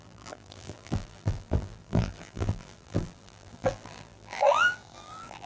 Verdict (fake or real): fake